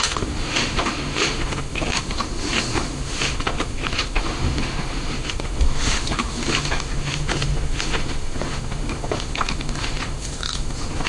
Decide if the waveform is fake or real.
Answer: fake